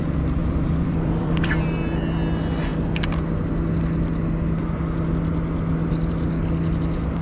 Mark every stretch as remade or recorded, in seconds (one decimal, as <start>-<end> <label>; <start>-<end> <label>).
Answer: 0.0-0.4 recorded; 0.4-1.6 remade; 1.6-7.2 recorded